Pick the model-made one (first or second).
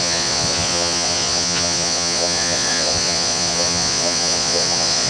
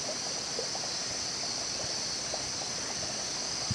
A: first